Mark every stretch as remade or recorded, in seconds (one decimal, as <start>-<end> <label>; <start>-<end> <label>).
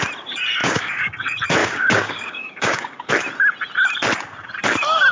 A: 0.0-0.6 recorded; 0.6-1.1 remade; 1.1-1.6 recorded; 1.6-3.1 remade; 3.1-5.1 recorded